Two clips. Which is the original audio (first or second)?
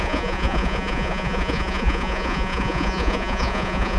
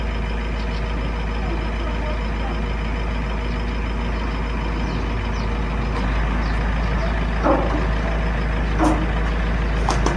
second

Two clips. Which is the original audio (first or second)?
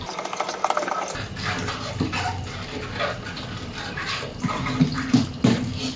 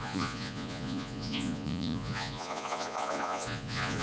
first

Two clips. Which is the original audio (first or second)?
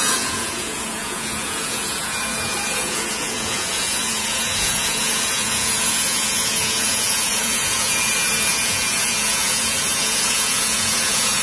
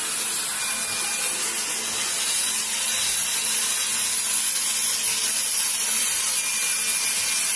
second